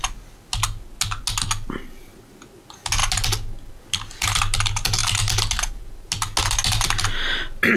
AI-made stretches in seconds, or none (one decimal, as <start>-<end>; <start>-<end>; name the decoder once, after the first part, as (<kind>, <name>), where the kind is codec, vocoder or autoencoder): none